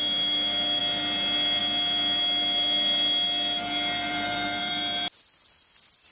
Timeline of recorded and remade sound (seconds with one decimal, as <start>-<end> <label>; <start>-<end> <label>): 0.0-4.0 recorded; 4.0-4.8 remade; 4.8-6.1 recorded